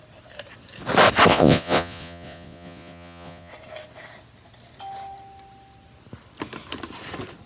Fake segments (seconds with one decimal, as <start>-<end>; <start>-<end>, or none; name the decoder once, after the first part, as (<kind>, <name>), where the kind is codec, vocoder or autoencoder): 1.3-3.5 (vocoder, Vocos)